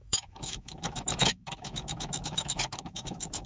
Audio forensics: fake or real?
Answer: fake